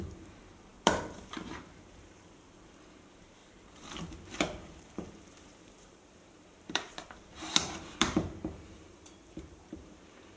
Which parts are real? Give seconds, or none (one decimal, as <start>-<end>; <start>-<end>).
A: 3.4-4.3